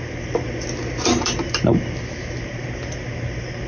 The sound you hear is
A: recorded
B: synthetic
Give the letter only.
A